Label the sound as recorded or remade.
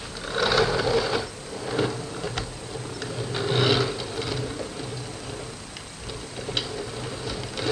recorded